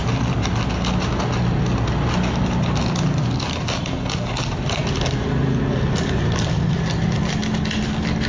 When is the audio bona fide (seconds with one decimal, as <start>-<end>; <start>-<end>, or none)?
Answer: 0.0-8.3

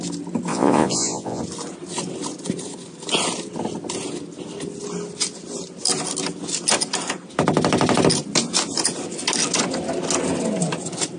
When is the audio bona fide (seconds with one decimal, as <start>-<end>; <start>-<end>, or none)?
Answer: 0.0-0.5; 1.4-11.2

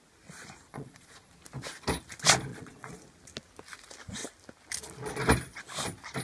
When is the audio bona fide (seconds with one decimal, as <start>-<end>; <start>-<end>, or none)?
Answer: 0.0-0.7; 1.3-2.5; 3.0-6.2

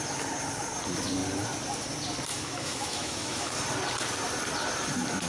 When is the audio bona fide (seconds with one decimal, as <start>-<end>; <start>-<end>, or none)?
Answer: 0.0-2.3; 3.5-5.3